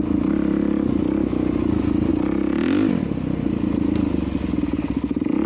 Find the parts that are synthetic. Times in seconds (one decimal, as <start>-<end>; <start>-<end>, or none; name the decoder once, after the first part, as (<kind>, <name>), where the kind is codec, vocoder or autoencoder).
none